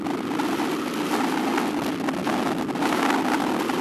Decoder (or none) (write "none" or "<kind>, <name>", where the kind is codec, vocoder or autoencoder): none